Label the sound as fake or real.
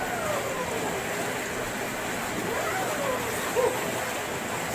real